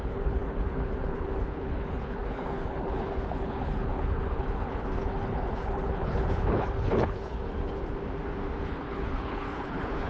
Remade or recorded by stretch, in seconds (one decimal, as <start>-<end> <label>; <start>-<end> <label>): 0.0-7.8 remade; 7.8-8.6 recorded; 8.6-10.1 remade